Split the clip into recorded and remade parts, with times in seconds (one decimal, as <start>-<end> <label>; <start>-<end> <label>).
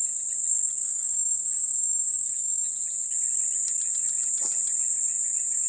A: 0.0-0.8 recorded; 0.8-2.7 remade; 2.7-5.7 recorded